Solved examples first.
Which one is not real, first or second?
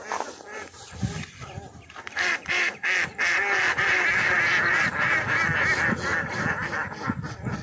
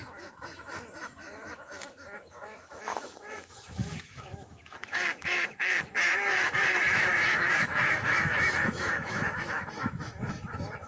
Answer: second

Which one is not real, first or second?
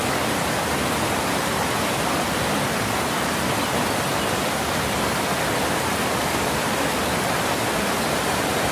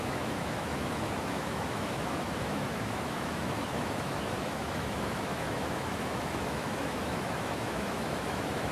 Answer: second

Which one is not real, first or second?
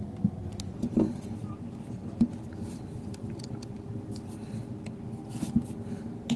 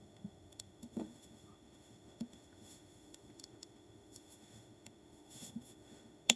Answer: second